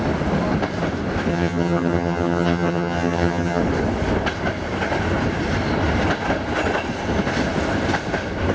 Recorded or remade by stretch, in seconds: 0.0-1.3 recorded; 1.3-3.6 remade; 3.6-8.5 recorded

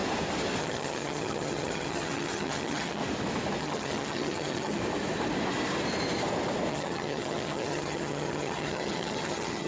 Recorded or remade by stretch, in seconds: 0.0-0.6 recorded; 0.6-3.0 remade; 3.0-3.6 recorded; 3.6-4.8 remade; 4.8-6.7 recorded; 6.7-9.7 remade